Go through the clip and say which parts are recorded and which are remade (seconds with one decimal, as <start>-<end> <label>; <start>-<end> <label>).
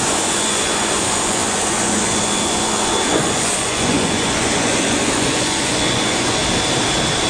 0.0-6.4 remade; 6.4-7.3 recorded